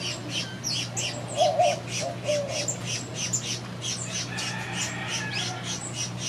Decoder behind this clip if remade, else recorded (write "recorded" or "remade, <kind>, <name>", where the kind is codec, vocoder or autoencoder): recorded